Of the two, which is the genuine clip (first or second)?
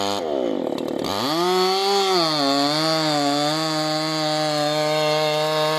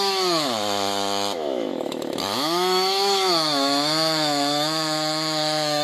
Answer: first